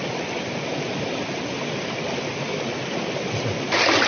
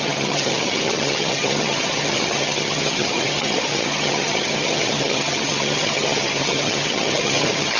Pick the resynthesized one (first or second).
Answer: second